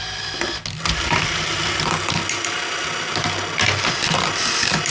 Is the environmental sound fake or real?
real